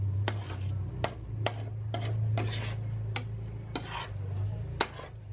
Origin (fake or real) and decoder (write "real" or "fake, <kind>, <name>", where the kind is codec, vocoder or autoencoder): real